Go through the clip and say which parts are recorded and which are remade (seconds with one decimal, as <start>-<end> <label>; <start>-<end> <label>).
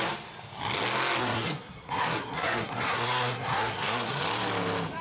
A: 0.0-1.2 recorded; 1.2-4.2 remade; 4.2-5.0 recorded